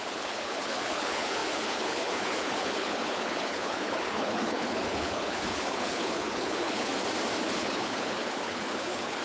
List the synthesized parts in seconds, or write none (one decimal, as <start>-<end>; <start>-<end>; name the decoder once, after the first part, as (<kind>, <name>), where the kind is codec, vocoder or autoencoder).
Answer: 0.0-6.9 (codec, HILCodec); 7.5-9.2